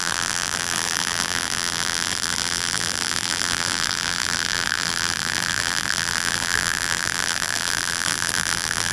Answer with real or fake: fake